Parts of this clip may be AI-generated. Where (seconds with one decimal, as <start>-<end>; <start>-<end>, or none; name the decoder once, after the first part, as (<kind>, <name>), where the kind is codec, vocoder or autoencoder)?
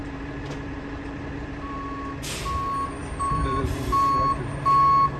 0.0-2.2 (vocoder, BigVGAN v2); 3.0-3.8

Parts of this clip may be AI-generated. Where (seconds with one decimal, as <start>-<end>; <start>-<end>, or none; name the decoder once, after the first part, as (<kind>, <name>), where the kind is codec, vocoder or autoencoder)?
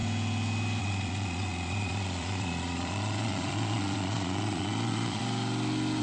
0.8-5.2 (vocoder, Vocos)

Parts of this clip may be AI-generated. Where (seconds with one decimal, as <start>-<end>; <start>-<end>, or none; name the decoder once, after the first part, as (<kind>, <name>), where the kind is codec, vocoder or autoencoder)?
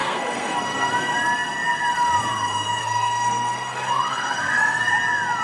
0.0-0.9 (codec, SNAC); 2.8-4.9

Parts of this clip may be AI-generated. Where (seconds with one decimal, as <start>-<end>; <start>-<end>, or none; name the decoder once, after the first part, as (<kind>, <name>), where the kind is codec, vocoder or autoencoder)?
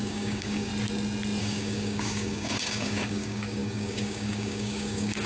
0.0-0.7 (codec, DAC); 1.4-5.3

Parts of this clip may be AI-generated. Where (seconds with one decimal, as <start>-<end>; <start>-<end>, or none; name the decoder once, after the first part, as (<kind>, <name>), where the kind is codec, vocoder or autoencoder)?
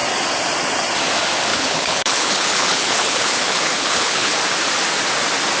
1.5-4.3 (codec, HILCodec)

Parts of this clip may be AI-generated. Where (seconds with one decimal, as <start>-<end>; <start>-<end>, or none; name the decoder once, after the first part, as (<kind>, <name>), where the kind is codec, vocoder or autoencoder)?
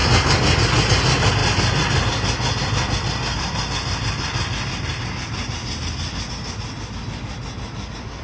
1.4-6.3 (vocoder, BigVGAN v2)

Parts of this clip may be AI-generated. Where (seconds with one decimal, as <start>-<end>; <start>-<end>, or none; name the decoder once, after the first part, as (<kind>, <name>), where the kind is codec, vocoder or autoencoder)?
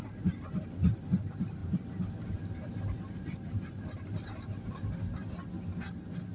1.6-5.0 (vocoder, BigVGAN v2)